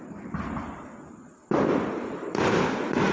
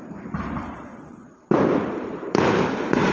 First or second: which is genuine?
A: first